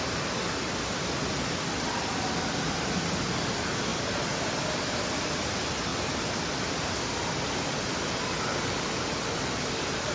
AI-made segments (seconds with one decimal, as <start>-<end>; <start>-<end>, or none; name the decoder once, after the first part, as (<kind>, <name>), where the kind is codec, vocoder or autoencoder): none